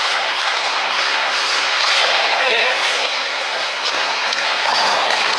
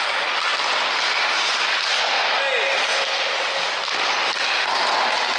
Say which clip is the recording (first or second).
second